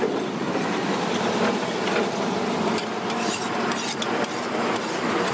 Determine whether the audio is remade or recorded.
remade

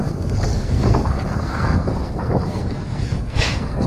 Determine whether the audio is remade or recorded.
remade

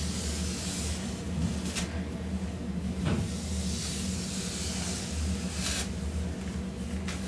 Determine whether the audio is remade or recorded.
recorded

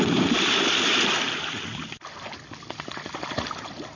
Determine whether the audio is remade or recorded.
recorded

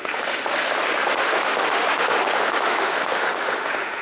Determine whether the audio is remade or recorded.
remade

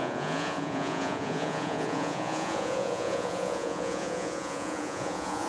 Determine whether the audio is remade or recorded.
remade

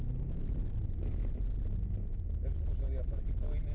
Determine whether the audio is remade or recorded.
recorded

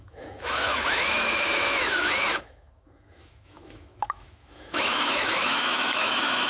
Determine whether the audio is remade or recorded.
remade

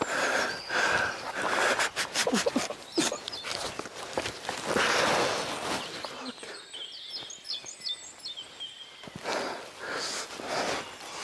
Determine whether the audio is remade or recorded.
recorded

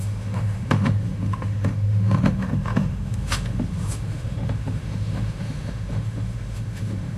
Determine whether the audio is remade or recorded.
remade